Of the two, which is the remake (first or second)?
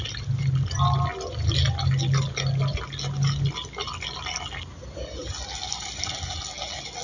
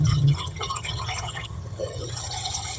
second